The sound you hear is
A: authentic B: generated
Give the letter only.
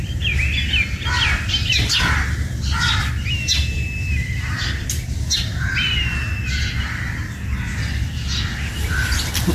A